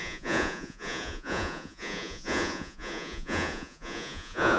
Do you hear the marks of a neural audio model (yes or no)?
yes